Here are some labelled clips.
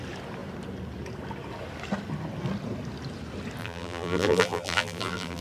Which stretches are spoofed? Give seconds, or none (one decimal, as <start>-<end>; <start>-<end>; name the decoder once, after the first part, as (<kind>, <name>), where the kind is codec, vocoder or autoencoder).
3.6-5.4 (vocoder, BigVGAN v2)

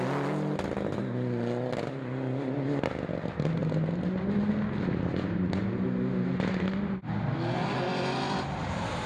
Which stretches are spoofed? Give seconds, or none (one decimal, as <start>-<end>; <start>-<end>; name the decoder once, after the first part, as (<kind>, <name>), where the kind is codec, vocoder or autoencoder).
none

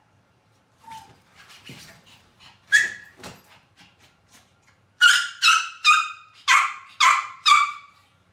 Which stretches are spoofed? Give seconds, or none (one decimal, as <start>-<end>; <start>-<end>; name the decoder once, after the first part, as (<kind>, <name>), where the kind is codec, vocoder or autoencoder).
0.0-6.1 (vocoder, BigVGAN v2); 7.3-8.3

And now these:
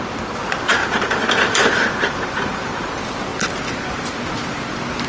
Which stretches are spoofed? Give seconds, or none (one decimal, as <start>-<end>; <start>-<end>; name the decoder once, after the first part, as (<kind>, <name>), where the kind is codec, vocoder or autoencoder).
0.8-2.9 (vocoder, BigVGAN v2)

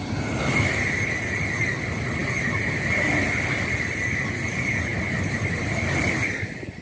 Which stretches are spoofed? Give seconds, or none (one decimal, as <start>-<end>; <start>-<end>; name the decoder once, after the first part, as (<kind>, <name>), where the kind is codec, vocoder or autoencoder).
none

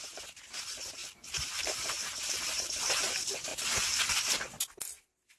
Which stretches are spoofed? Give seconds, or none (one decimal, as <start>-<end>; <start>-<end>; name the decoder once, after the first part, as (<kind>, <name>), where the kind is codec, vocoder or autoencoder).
1.0-2.7 (vocoder, BigVGAN v2)